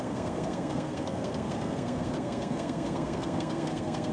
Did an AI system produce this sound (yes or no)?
yes